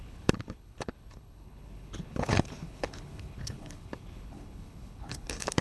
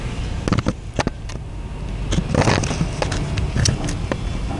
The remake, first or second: first